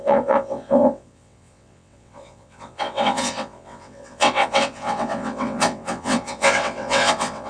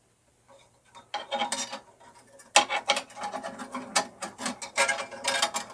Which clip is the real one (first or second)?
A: second